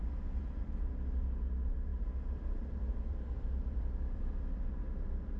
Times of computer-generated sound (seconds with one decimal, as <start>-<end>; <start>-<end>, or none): 1.9-4.4